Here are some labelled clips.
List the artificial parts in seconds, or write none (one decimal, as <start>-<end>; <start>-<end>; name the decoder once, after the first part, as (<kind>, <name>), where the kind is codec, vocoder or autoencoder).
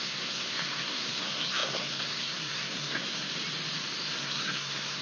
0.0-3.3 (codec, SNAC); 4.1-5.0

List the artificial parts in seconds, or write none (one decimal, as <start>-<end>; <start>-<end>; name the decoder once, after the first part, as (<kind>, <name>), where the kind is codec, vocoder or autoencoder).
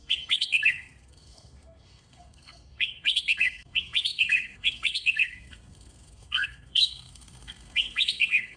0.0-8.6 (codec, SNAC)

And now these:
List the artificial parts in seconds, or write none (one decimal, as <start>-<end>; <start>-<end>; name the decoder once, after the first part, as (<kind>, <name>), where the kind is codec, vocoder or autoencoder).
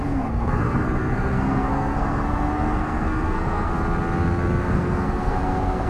0.0-3.7 (codec, SNAC); 4.6-5.9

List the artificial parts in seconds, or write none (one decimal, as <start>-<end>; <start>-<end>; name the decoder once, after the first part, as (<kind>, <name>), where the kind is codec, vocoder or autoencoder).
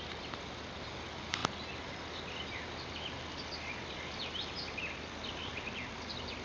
none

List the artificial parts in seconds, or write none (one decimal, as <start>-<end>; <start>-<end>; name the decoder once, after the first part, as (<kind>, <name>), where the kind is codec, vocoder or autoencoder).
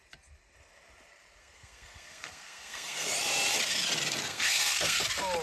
1.4-3.1 (codec, SNAC); 4.3-5.0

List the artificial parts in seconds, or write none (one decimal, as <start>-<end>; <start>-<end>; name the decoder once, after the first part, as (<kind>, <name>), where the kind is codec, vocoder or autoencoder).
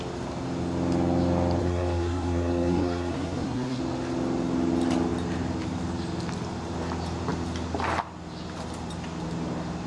1.6-3.8 (codec, SNAC)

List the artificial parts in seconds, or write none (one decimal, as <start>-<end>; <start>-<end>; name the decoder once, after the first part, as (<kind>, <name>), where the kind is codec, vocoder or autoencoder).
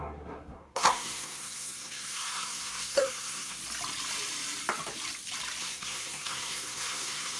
0.0-3.6 (codec, SNAC); 5.6-7.4